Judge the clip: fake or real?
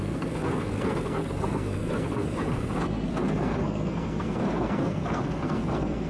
fake